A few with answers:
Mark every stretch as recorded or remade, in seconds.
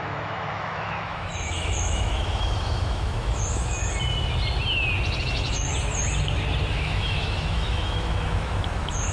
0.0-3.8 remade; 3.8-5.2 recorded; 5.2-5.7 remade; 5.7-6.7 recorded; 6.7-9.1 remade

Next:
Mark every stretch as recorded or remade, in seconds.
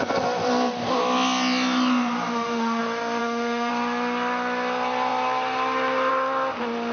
0.0-2.3 recorded; 2.3-2.8 remade; 2.8-3.2 recorded; 3.2-3.7 remade; 3.7-6.9 recorded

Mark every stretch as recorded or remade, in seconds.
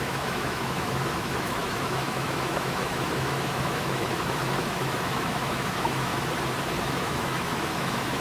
0.0-6.1 remade; 6.1-6.8 recorded; 6.8-8.2 remade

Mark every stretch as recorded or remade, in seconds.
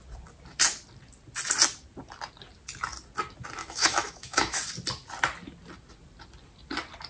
0.0-3.6 recorded; 3.6-4.6 remade; 4.6-7.1 recorded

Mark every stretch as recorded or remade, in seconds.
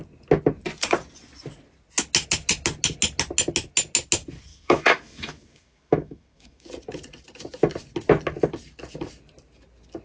0.0-4.5 recorded; 4.5-6.7 remade; 6.7-10.0 recorded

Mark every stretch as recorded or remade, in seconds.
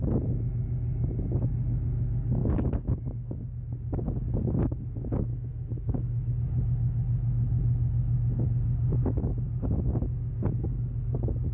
0.0-2.4 recorded; 2.4-3.4 remade; 3.4-5.3 recorded; 5.3-6.3 remade; 6.3-11.5 recorded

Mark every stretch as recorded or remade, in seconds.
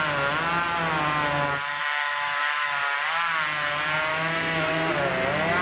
0.0-1.8 recorded; 1.8-2.8 remade; 2.8-4.1 recorded; 4.1-4.9 remade; 4.9-5.6 recorded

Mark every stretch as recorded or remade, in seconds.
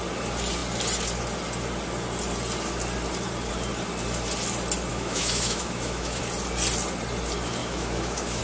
0.0-4.9 recorded; 4.9-6.2 remade; 6.2-7.6 recorded; 7.6-8.4 remade